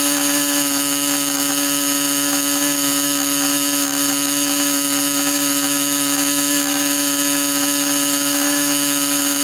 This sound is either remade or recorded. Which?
remade